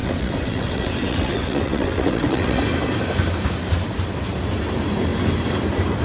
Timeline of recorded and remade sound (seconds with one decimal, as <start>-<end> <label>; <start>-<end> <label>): 0.0-2.6 remade; 2.6-6.0 recorded